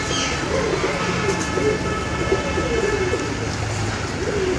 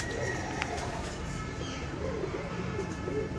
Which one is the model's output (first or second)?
second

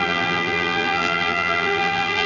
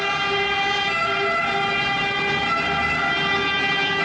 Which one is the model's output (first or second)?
first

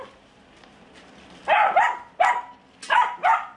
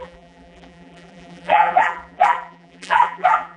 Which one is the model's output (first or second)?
second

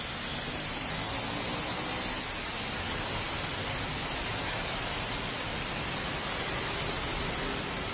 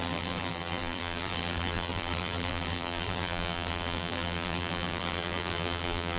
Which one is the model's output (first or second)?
second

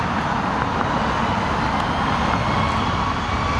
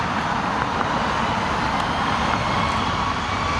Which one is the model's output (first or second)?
second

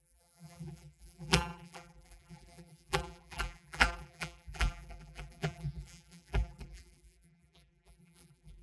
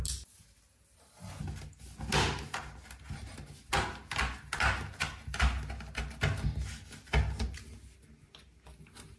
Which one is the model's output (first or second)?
first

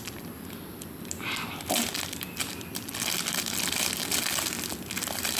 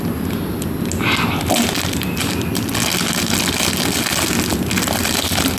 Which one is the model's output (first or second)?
first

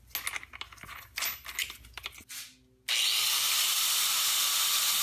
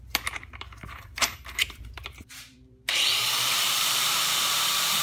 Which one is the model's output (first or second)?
second